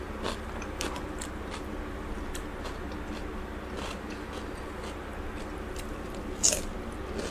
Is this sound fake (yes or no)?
no